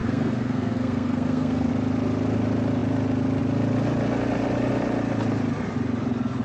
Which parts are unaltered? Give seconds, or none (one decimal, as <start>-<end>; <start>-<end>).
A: 1.7-6.4